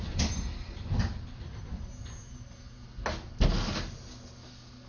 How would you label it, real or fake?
real